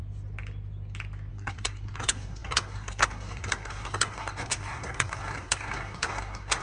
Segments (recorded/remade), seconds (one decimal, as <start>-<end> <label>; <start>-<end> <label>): 0.0-1.3 recorded; 1.3-6.6 remade